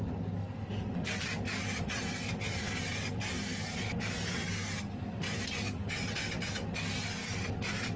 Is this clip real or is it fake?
real